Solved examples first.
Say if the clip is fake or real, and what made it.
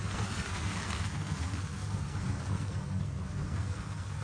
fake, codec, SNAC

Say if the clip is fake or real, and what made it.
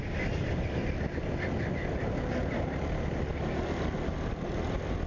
real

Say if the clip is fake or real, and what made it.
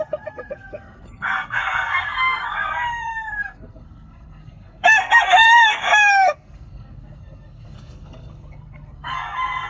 fake, codec, SNAC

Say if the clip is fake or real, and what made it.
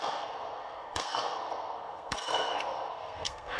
fake, codec, SNAC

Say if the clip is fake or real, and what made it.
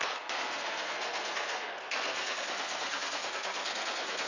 fake, codec, SNAC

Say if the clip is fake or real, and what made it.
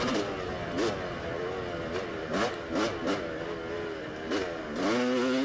real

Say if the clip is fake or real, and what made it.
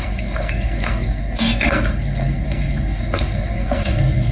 fake, codec, SNAC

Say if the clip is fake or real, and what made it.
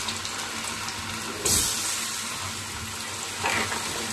real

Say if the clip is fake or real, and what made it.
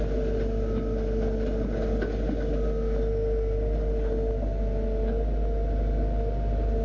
real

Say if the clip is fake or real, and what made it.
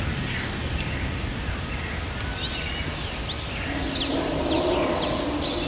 real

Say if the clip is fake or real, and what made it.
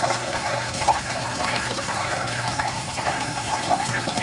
fake, codec, SNAC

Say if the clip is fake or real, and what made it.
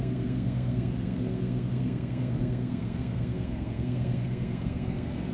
fake, codec, SNAC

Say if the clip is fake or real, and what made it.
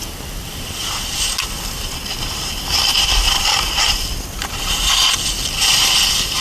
real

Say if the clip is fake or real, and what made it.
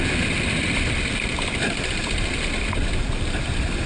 real